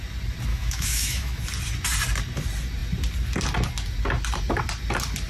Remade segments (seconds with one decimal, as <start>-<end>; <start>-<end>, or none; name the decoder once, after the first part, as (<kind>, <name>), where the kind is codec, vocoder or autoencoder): 0.5-1.4 (autoencoder, DAC-VAE)